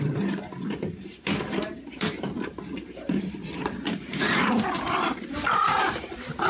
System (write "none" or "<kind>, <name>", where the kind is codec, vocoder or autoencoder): vocoder, BigVGAN v2